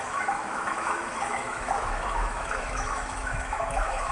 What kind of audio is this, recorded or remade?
remade